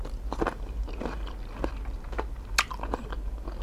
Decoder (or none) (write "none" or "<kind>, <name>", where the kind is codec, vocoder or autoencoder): none